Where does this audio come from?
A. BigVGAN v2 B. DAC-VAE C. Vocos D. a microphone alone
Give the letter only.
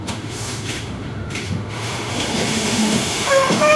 B